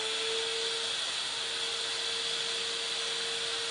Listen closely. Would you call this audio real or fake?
real